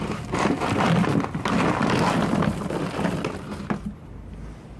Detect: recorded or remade recorded